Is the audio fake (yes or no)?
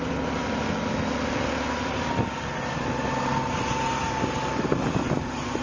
no